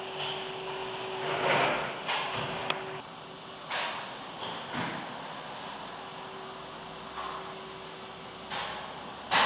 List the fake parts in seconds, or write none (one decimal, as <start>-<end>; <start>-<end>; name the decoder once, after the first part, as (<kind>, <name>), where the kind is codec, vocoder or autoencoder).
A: none